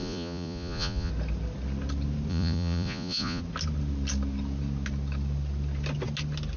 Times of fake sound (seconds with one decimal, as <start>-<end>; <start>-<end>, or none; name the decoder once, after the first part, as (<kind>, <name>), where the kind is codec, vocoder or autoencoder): 0.0-1.1 (vocoder, Vocos); 2.3-3.4